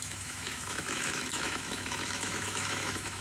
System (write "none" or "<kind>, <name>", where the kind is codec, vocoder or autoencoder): autoencoder, DAC-VAE